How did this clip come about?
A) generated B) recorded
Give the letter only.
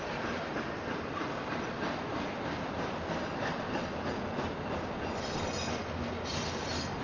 B